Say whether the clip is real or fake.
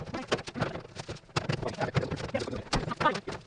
real